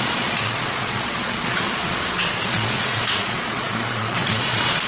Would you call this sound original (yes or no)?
no